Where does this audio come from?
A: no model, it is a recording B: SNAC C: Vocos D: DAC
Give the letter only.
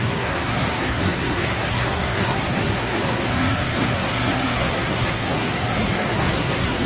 B